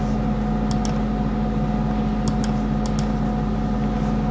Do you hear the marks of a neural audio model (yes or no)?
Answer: no